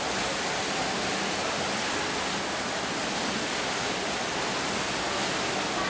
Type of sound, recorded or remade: recorded